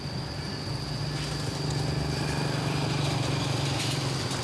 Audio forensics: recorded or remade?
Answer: recorded